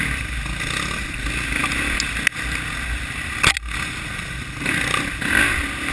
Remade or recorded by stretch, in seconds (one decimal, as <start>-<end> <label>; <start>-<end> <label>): 0.0-5.9 recorded